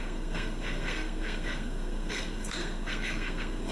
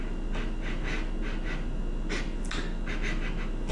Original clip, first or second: second